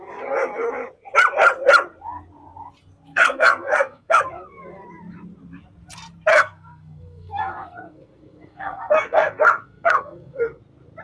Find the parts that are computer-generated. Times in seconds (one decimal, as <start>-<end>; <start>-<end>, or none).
3.1-4.2; 6.3-10.6

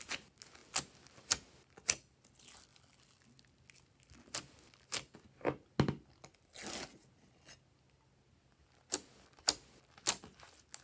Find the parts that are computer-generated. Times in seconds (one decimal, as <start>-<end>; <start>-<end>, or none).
none